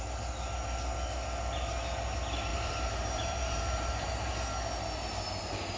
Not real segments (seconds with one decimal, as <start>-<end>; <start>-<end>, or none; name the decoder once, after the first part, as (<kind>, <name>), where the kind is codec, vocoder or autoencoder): 2.5-4.1 (vocoder, BigVGAN v2)